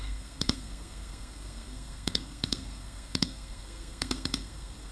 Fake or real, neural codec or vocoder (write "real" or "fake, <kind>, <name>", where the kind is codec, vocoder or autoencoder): fake, codec, SNAC